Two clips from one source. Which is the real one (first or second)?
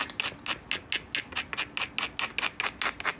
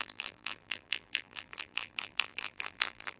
first